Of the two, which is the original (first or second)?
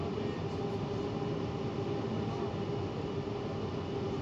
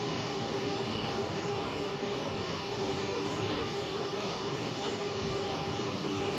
first